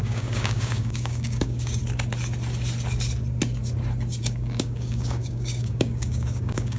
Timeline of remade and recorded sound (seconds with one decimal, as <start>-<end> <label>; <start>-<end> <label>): 0.0-1.8 remade; 1.8-4.2 recorded; 4.2-6.8 remade